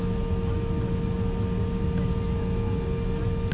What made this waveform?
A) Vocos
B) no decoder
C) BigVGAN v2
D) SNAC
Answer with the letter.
B